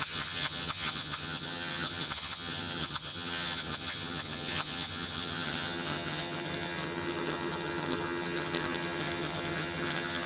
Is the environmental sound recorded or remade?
remade